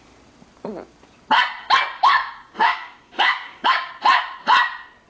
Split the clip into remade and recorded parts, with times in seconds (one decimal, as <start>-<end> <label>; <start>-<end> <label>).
0.0-2.0 recorded; 2.0-3.9 remade; 3.9-5.1 recorded